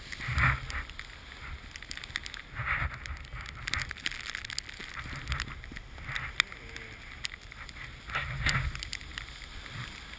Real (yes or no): yes